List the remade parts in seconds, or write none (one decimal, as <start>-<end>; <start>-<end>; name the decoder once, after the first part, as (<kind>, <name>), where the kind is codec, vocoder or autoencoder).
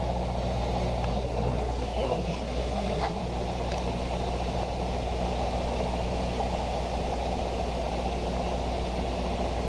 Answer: 1.1-3.2 (codec, SNAC)